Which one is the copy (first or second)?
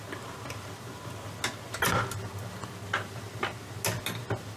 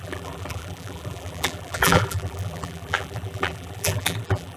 second